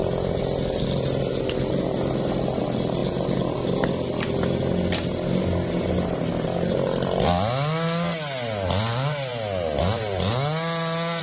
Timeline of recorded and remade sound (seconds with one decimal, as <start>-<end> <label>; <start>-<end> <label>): 0.0-11.2 recorded